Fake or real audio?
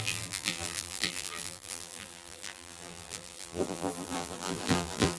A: fake